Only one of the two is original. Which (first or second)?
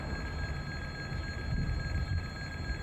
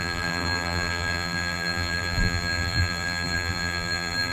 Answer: first